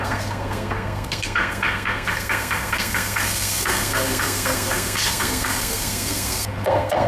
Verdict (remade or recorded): remade